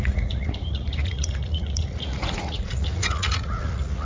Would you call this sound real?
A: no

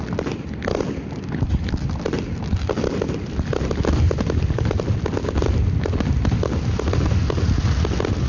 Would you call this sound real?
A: yes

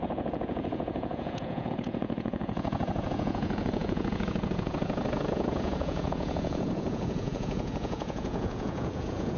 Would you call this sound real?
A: no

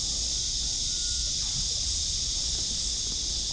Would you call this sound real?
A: yes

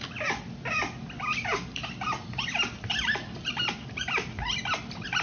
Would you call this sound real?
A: yes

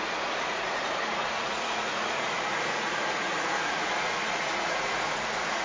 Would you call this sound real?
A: no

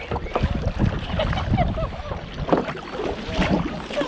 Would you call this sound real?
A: yes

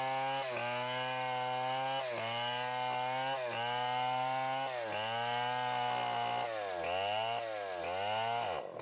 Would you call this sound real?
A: yes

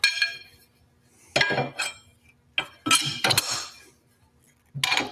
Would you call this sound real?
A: yes